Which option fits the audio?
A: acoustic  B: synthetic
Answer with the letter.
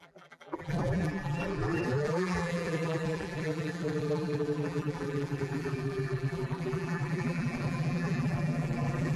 B